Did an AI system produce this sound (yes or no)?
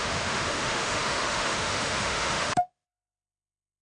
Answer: yes